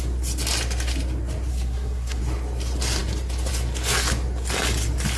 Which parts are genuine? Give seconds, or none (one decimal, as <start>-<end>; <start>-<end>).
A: 0.0-1.5; 2.2-5.2